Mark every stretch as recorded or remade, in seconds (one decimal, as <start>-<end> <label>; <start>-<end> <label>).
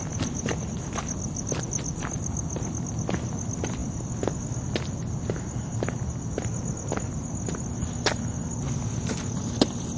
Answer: 0.0-10.0 recorded